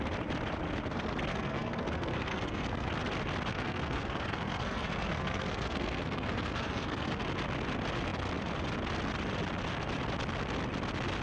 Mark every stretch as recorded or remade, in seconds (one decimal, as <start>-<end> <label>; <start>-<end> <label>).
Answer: 0.0-1.3 recorded; 1.3-2.9 remade; 2.9-3.5 recorded; 3.5-7.2 remade; 7.2-11.2 recorded